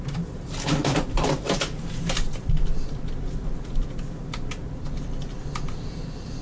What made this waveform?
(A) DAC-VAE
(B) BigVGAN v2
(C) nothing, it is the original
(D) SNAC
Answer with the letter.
C